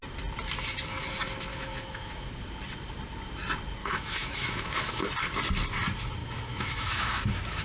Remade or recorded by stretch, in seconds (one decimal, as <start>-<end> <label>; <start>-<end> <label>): 0.0-1.5 recorded; 1.5-2.3 remade; 2.3-3.8 recorded; 3.8-5.1 remade; 5.1-6.2 recorded; 6.2-7.6 remade